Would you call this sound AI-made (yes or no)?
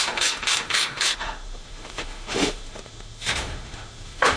yes